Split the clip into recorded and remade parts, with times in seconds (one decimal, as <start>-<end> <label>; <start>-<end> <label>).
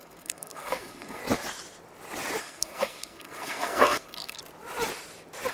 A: 0.0-1.2 remade; 1.2-2.4 recorded; 2.4-4.4 remade; 4.4-5.5 recorded